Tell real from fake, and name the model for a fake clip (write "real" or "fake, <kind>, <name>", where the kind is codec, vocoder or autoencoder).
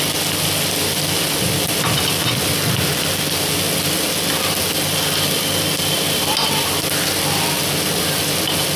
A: real